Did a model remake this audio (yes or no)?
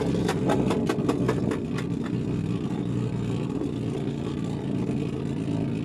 no